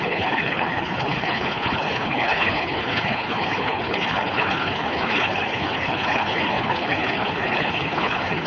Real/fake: fake